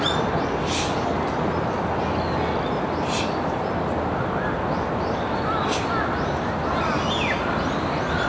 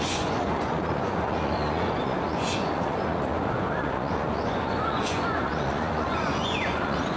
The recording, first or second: first